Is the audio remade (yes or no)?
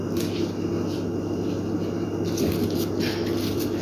no